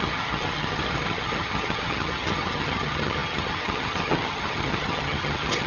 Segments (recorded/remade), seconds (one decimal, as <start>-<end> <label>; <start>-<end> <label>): 0.0-5.7 remade